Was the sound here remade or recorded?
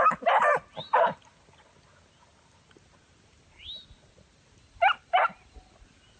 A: recorded